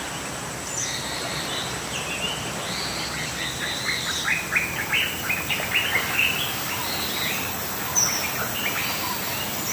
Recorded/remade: recorded